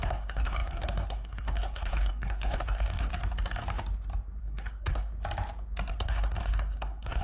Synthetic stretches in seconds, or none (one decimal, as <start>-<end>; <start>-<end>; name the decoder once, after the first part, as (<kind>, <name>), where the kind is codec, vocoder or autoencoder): 0.0-3.1 (codec, SNAC); 4.4-5.1; 5.9-7.2

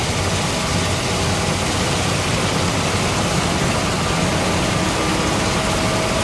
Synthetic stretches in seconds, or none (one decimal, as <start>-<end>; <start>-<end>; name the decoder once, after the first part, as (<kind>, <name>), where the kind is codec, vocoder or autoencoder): none

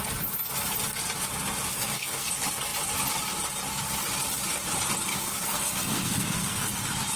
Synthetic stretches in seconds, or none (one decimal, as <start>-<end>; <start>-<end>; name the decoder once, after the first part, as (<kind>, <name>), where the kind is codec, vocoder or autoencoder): 1.7-2.3 (codec, SNAC); 5.1-6.8

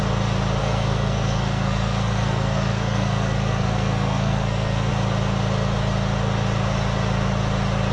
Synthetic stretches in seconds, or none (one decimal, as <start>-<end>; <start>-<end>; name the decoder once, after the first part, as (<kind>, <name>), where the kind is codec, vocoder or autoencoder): 0.6-4.9 (codec, SNAC)

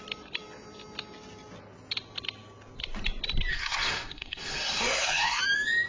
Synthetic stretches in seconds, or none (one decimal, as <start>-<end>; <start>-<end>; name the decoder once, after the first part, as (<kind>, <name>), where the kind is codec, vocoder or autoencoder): 3.5-5.4 (codec, SNAC)

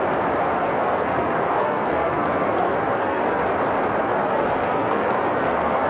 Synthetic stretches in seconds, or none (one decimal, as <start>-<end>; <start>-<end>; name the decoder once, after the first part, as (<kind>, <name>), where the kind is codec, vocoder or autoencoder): 0.4-3.5 (codec, SNAC); 4.0-5.9

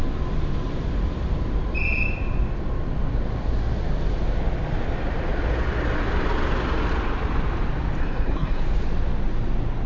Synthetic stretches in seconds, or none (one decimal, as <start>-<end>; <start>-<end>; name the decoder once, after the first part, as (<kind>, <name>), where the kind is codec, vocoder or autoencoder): 8.0-8.6 (codec, SNAC)

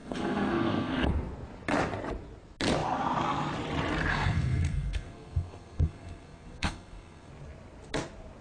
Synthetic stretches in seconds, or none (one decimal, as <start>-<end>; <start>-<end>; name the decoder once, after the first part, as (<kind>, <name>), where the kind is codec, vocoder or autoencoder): 0.0-1.1 (codec, SNAC); 4.1-7.3